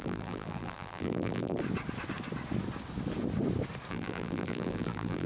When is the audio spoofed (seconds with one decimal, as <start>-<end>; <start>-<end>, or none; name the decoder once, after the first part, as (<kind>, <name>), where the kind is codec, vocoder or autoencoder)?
0.0-1.6 (vocoder, BigVGAN v2); 3.9-5.3